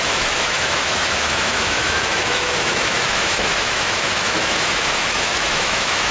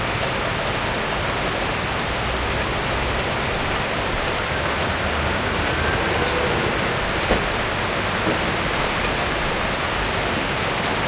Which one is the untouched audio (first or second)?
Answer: second